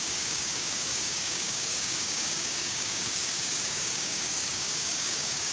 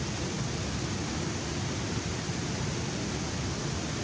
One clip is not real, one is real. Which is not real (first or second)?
first